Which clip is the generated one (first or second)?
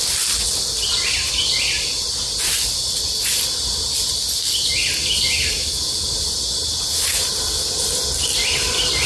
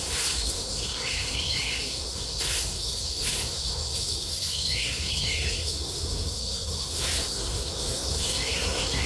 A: second